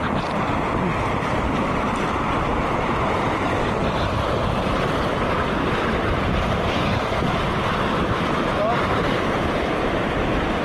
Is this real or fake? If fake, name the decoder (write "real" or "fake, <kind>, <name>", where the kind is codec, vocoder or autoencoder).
real